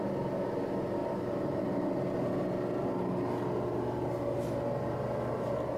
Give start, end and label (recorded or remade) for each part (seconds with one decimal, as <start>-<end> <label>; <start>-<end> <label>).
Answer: 0.0-5.8 recorded